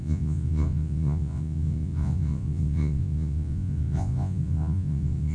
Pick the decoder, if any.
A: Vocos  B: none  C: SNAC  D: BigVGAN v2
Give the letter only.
A